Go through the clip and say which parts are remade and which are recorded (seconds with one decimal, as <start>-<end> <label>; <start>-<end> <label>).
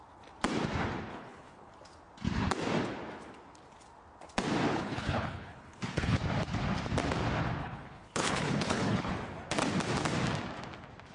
0.0-1.1 recorded; 1.1-1.7 remade; 1.7-4.7 recorded; 4.7-6.2 remade; 6.2-7.6 recorded; 7.6-9.1 remade; 9.1-11.1 recorded